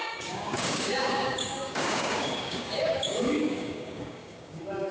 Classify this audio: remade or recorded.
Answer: remade